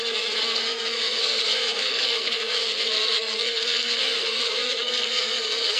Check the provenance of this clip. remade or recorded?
remade